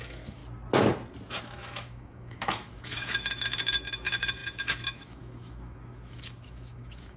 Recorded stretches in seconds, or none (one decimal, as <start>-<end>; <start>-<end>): 0.4-1.4